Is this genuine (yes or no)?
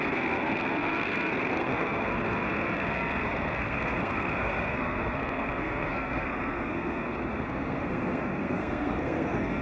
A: no